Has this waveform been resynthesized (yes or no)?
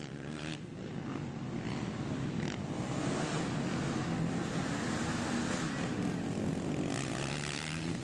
no